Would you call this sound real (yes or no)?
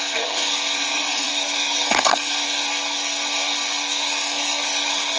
no